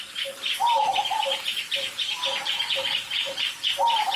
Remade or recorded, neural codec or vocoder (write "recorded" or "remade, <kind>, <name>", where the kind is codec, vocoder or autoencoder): remade, vocoder, BigVGAN v2